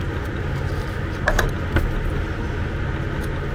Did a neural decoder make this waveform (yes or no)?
no